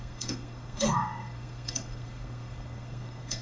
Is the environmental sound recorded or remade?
remade